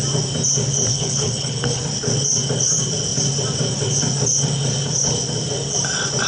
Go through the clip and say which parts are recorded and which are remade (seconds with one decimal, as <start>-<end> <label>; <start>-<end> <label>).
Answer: 0.0-0.9 recorded; 0.9-1.8 remade; 1.8-6.3 recorded